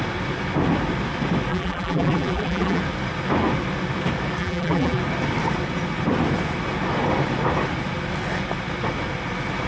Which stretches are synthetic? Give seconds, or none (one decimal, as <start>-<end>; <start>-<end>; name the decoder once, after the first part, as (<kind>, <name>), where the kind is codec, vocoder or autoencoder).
1.5-2.8 (vocoder, BigVGAN v2); 4.4-5.0